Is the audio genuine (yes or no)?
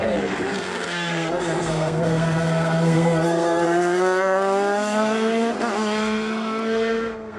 no